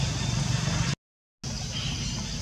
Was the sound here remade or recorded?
recorded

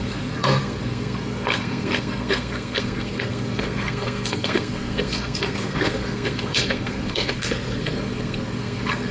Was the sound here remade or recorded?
remade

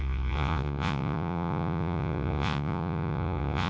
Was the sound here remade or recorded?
remade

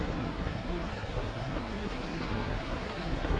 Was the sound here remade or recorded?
remade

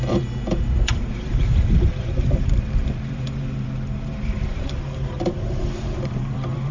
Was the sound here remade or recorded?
remade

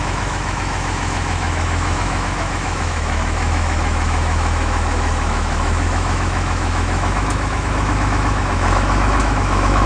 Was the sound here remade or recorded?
remade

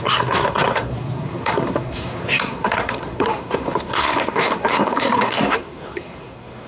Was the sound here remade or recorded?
remade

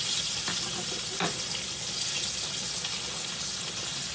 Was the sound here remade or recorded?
recorded